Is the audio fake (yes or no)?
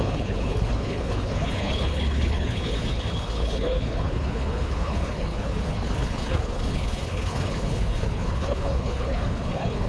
yes